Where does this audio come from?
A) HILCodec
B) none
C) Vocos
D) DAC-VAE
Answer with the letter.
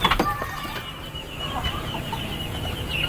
B